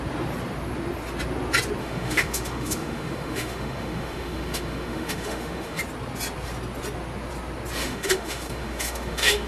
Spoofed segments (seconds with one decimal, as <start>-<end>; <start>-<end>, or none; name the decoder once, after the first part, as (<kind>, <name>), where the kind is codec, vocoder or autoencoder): 1.8-5.8 (autoencoder, DAC-VAE); 7.8-9.5